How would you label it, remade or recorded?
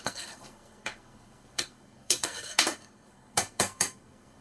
remade